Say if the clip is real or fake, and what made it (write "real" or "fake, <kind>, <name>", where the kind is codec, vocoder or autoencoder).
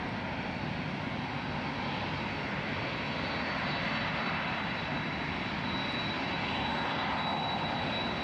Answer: real